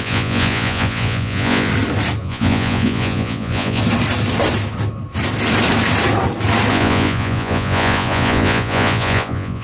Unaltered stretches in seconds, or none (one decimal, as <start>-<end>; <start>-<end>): 1.7-2.2; 3.8-6.7